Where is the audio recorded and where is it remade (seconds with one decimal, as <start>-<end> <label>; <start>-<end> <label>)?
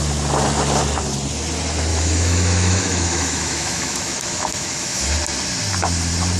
0.0-1.9 recorded; 1.9-5.0 remade; 5.0-6.4 recorded